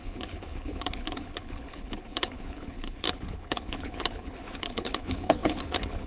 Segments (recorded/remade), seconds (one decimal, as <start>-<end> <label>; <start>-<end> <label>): 0.0-6.1 remade